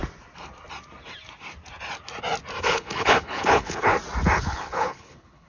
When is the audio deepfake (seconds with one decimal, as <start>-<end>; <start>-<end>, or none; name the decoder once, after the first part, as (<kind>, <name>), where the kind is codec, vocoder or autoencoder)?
2.6-3.9 (codec, HILCodec); 4.4-5.5